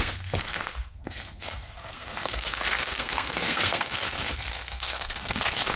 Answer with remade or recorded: remade